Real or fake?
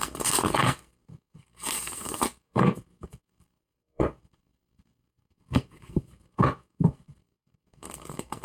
fake